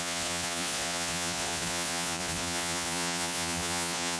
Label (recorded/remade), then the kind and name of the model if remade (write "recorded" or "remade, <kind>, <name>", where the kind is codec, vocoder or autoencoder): remade, vocoder, Vocos